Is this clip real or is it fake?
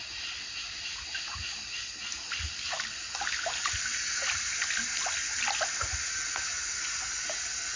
real